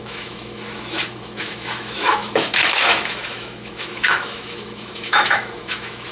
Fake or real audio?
fake